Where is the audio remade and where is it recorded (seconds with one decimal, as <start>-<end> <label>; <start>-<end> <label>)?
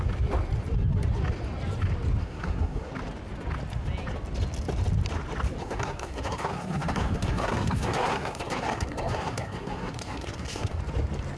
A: 0.0-2.2 recorded; 2.2-2.9 remade; 2.9-5.6 recorded; 5.6-10.8 remade; 10.8-11.4 recorded